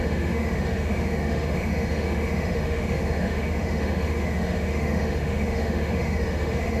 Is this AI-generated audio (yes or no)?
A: yes